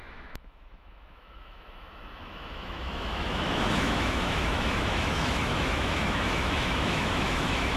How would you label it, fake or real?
fake